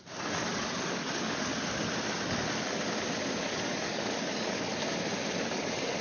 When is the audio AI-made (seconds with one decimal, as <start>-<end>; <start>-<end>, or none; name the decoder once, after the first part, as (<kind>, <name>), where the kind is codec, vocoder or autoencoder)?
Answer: 0.0-1.5 (codec, DAC); 3.4-4.7; 5.4-6.0